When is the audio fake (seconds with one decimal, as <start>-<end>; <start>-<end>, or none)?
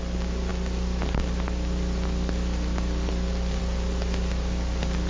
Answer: none